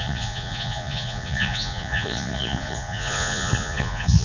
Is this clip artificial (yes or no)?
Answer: yes